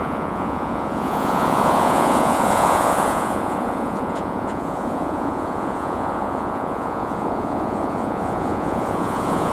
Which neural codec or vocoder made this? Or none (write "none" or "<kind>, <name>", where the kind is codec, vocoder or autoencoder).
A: vocoder, Vocos